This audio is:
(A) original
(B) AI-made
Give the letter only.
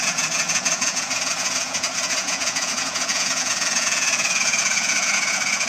B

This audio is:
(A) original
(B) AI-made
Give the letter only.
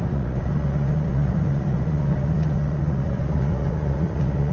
B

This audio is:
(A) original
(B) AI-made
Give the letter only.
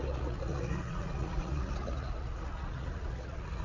B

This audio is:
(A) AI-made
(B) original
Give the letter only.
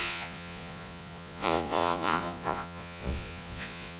A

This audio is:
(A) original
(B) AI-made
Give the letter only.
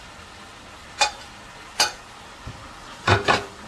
A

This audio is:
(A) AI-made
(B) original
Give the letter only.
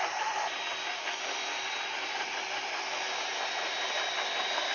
B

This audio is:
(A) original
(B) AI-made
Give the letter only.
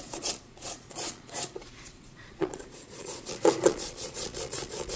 B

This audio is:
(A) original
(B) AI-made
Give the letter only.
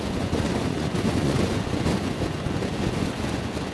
B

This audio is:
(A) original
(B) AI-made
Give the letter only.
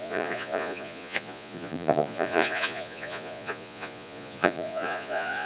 B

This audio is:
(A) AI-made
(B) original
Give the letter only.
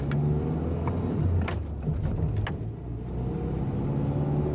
B